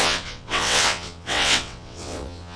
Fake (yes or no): yes